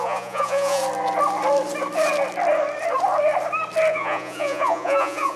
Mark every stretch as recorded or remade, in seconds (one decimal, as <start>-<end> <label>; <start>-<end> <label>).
0.0-0.8 remade; 0.8-3.9 recorded; 3.9-5.4 remade